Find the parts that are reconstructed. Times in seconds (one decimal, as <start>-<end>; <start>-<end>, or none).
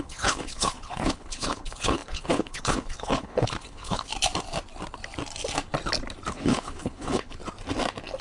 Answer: 0.0-4.1; 6.3-7.4